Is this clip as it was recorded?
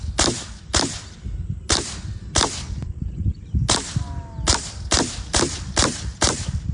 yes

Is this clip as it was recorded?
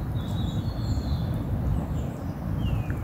yes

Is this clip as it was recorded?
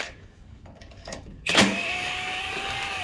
no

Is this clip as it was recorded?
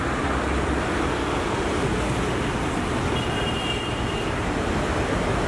yes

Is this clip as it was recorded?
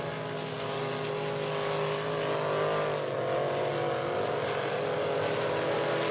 yes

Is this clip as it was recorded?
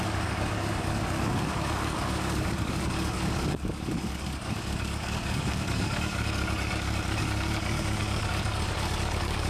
no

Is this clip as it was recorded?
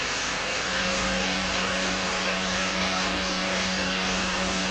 no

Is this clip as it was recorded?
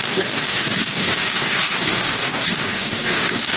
no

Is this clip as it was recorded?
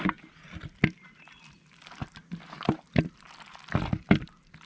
yes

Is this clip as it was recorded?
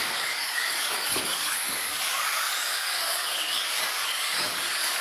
no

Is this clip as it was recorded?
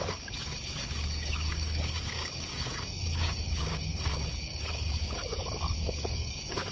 no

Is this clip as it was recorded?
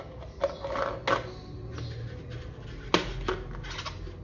yes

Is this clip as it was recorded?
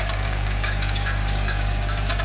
no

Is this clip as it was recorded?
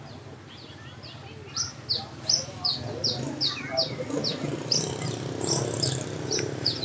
yes